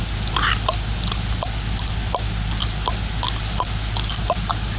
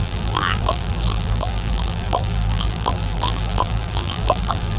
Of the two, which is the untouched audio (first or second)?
first